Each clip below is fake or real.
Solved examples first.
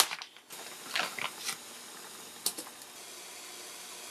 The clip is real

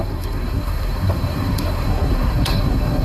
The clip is fake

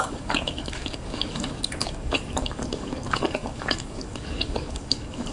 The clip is fake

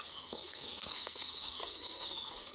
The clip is fake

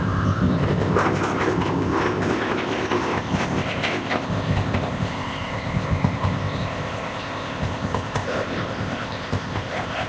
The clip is fake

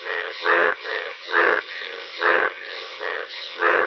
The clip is fake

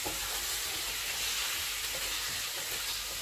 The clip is real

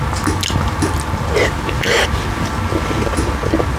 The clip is real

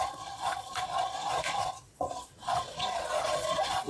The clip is fake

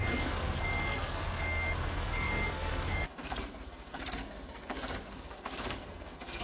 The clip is fake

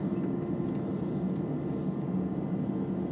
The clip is real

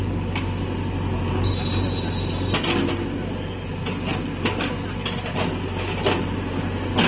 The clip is real